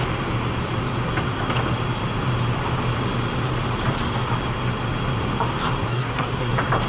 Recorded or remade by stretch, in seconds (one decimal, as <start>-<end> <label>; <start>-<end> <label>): 0.0-5.9 recorded; 5.9-6.5 remade; 6.5-6.9 recorded